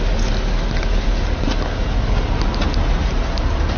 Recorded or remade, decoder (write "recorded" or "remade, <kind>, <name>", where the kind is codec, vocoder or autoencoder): recorded